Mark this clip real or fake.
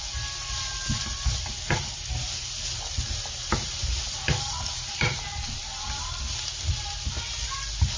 real